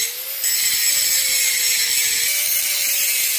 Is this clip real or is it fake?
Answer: fake